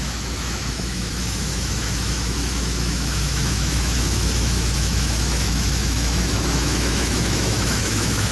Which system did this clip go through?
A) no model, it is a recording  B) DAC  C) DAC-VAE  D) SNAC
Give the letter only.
C